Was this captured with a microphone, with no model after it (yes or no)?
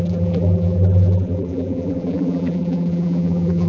no